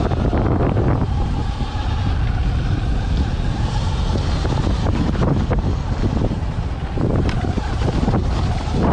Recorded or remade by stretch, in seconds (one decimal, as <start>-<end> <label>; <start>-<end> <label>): 0.0-8.9 recorded